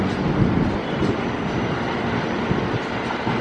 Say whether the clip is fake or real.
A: real